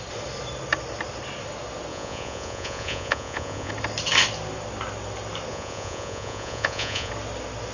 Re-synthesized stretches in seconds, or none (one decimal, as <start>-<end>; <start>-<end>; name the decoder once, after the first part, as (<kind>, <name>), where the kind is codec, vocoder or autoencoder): 1.9-3.7 (vocoder, Vocos); 5.5-7.1